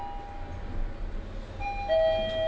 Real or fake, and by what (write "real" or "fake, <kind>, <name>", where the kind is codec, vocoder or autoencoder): real